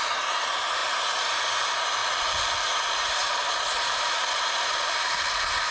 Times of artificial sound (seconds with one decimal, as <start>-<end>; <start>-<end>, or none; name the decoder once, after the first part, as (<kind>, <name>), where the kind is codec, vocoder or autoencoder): 0.0-2.0 (vocoder, BigVGAN v2); 2.8-5.7